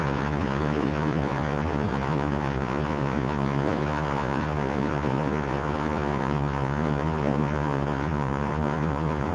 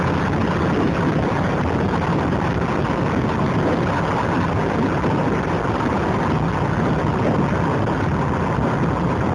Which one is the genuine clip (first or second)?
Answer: second